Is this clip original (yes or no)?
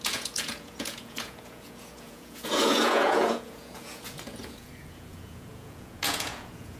no